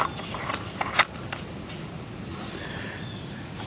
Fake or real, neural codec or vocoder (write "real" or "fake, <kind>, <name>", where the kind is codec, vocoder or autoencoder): real